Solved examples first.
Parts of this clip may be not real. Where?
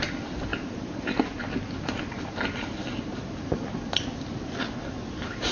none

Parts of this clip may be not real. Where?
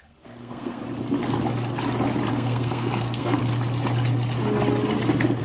0.0-0.8 (codec, SNAC); 2.3-3.4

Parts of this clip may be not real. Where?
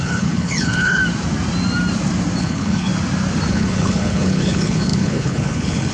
0.0-1.0 (codec, HILCodec); 2.4-2.9; 3.5-5.9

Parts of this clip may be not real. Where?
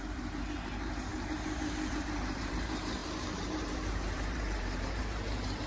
0.0-5.7 (vocoder, BigVGAN v2)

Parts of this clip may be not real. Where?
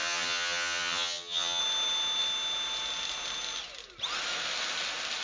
0.0-1.6 (vocoder, HiFi-GAN)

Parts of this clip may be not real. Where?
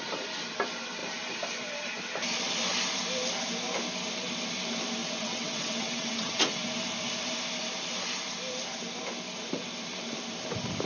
5.0-6.7 (vocoder, WaveNeXt)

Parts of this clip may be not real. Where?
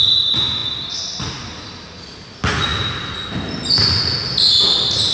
none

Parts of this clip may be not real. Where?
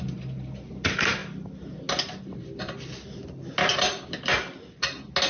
none